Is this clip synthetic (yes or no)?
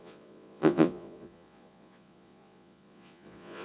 yes